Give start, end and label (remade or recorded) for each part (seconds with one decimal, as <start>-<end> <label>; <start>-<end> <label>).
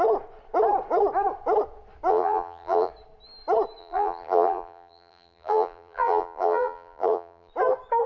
0.0-2.1 recorded; 2.1-2.9 remade; 2.9-3.8 recorded; 3.8-7.5 remade; 7.5-8.1 recorded